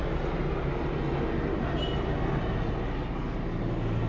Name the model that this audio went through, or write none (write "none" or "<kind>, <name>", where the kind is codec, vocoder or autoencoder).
none